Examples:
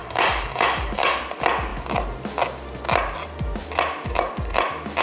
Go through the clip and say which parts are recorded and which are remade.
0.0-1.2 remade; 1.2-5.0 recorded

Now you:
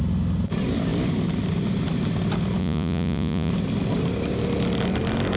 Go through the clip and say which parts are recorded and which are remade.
0.0-2.6 recorded; 2.6-3.5 remade; 3.5-5.4 recorded

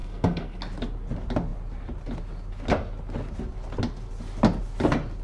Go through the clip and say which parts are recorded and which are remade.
0.0-0.6 remade; 0.6-5.2 recorded

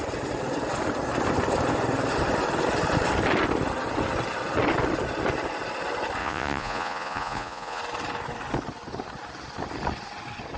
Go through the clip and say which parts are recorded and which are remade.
0.0-6.2 recorded; 6.2-7.8 remade; 7.8-10.6 recorded

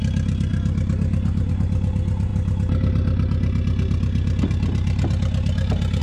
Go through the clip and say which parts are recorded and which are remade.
0.0-6.0 recorded

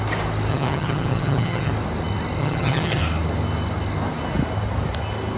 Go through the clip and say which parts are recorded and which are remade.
0.0-0.5 recorded; 0.5-1.7 remade; 1.7-2.4 recorded; 2.4-3.0 remade; 3.0-5.4 recorded